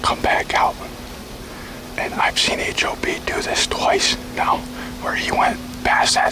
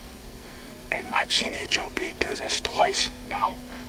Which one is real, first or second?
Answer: first